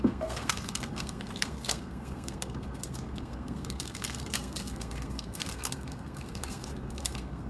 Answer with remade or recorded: remade